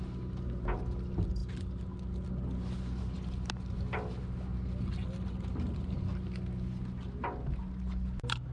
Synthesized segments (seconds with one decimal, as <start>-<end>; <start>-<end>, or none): none